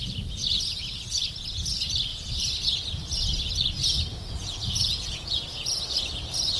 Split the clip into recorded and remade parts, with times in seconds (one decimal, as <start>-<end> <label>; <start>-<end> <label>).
0.0-4.1 recorded; 4.1-5.7 remade; 5.7-6.6 recorded